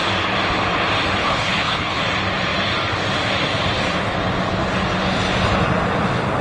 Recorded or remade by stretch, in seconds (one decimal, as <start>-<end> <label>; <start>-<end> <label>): 0.0-1.2 recorded; 1.2-2.0 remade; 2.0-6.4 recorded